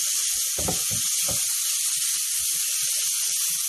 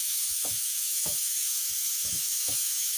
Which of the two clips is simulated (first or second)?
second